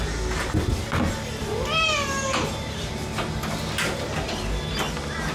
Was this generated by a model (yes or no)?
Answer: no